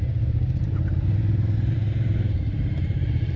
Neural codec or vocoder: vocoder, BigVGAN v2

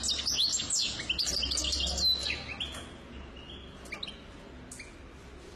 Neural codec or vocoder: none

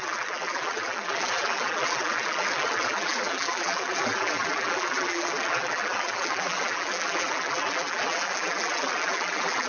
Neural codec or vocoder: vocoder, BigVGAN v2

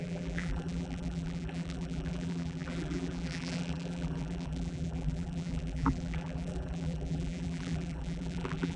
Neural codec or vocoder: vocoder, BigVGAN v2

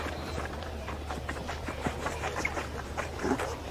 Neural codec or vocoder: vocoder, BigVGAN v2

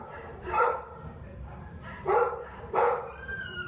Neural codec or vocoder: vocoder, BigVGAN v2